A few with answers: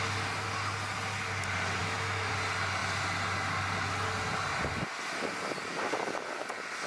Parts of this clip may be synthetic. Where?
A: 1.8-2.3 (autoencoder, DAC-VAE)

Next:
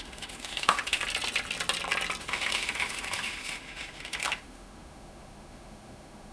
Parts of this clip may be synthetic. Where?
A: 0.0-1.0 (autoencoder, DAC-VAE); 2.2-6.3

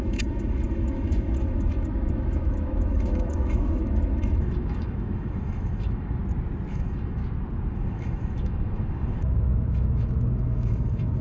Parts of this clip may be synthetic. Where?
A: 0.0-6.2 (autoencoder, DAC-VAE); 6.7-7.2; 7.7-11.2

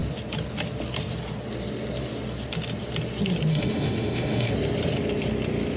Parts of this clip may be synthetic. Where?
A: 3.5-4.5 (autoencoder, DAC-VAE)

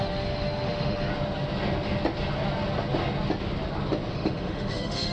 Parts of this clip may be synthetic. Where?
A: 0.0-1.1 (autoencoder, DAC-VAE); 4.1-5.1